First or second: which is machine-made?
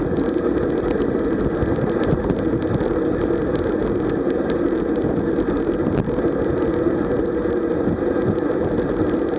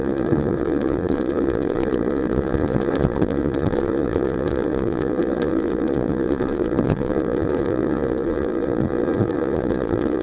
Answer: second